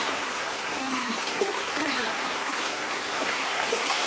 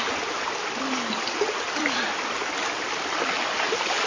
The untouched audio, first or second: second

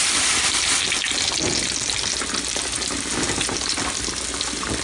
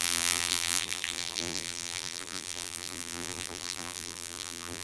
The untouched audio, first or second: first